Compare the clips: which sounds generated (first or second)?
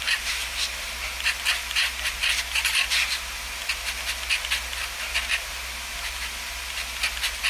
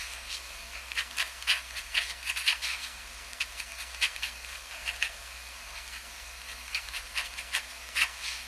second